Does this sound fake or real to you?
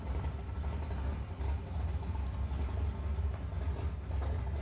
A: real